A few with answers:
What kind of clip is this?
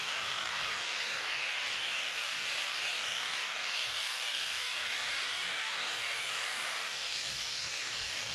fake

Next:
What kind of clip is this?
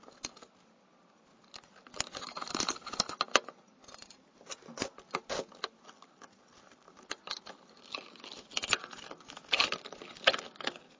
real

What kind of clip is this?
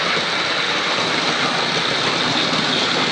real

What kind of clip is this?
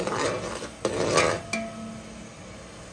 real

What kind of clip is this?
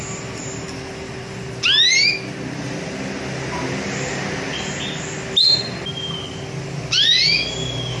real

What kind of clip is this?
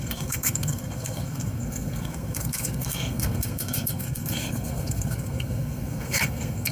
fake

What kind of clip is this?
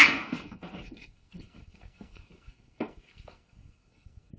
fake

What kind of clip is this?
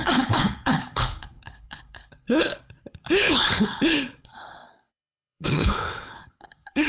fake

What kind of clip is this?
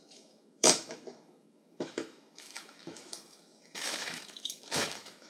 fake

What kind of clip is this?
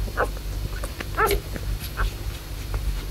real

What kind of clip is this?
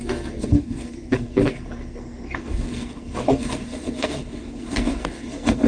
fake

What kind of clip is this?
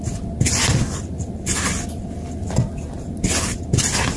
real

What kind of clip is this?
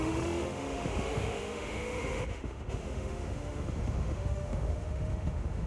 fake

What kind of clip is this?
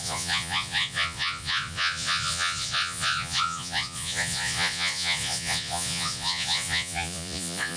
fake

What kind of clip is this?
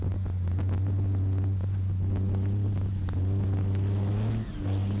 real